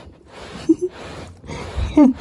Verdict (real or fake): fake